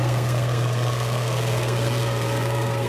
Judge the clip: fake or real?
fake